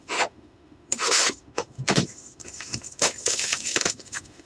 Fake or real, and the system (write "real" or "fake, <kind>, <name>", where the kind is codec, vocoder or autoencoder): fake, autoencoder, DAC-VAE